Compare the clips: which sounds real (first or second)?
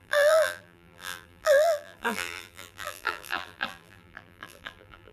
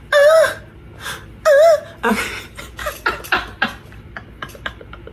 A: second